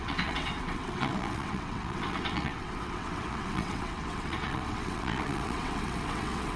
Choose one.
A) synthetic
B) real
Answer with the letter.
A